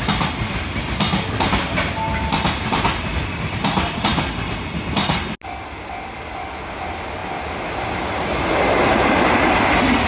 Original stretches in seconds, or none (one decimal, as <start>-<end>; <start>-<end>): 0.0-10.1